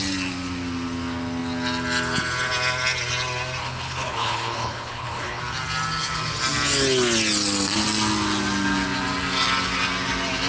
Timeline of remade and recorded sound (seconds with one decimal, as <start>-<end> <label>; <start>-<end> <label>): 0.0-3.6 recorded; 3.6-5.4 remade; 5.4-10.5 recorded